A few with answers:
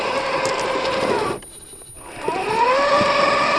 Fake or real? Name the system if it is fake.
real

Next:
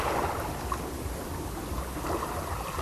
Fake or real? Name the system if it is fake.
real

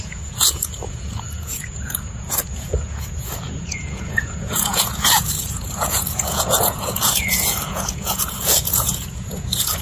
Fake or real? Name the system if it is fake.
fake, vocoder, Vocos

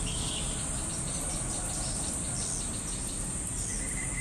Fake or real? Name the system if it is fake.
real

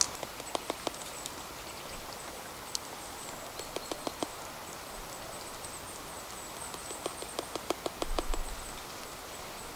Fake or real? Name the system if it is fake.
real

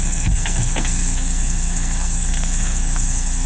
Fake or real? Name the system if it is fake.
fake, codec, SNAC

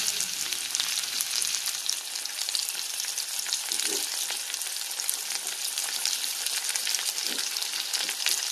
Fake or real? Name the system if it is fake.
real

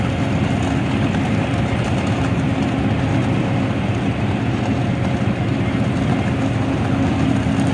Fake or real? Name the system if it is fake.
real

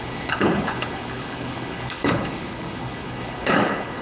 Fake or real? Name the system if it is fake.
fake, codec, HILCodec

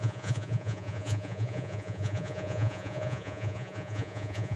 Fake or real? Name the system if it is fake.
fake, vocoder, Vocos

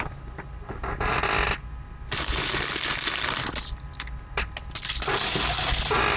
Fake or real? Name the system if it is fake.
real